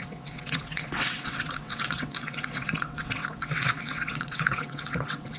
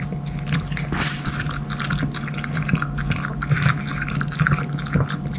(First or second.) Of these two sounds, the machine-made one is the first